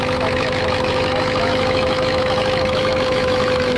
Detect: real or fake fake